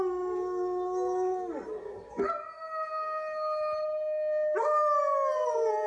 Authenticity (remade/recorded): recorded